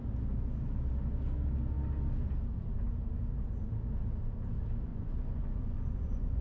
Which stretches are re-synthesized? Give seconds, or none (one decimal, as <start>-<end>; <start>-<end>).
4.9-6.4